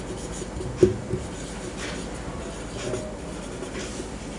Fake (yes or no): no